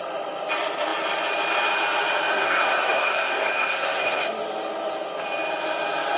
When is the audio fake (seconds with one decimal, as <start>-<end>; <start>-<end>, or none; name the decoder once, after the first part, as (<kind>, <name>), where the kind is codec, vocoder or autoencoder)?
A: 2.3-4.3 (codec, SNAC)